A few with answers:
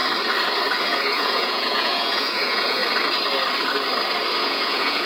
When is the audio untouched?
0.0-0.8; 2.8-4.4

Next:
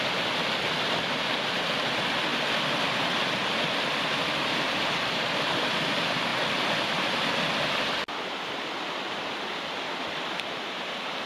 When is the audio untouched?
2.3-3.4; 6.3-7.6

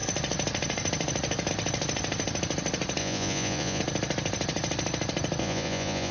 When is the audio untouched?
0.0-3.0; 3.8-5.4

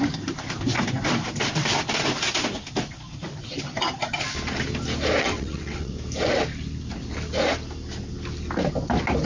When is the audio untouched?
0.0-5.2; 5.9-9.3

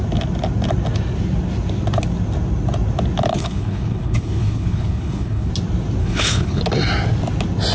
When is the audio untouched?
0.0-3.3; 5.5-6.0; 6.6-7.7

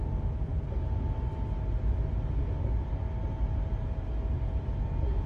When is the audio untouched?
0.0-5.3

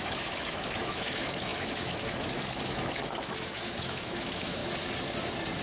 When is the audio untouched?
4.6-5.6